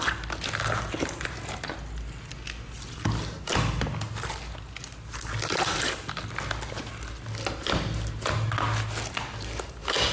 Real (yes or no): yes